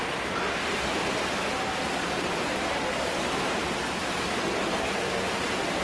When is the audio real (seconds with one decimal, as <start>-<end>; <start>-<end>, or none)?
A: 0.0-5.8